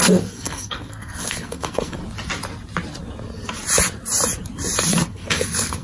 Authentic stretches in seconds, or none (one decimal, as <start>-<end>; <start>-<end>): 2.0-5.1